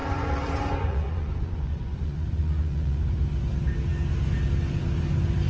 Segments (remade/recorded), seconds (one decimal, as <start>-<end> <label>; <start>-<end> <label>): 0.0-3.0 remade; 3.0-5.5 recorded